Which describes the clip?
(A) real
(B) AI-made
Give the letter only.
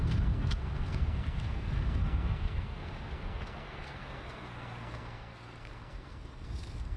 B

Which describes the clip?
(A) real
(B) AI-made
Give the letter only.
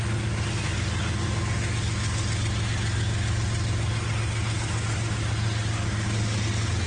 A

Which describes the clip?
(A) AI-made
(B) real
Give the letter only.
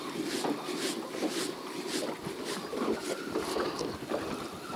B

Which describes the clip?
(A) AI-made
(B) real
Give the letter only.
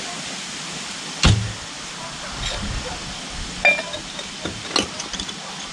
B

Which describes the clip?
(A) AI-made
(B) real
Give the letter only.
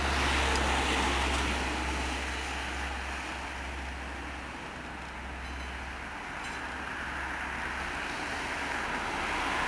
B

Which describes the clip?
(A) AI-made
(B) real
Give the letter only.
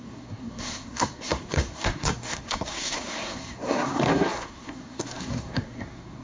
A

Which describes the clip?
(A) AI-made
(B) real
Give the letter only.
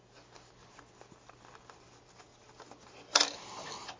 B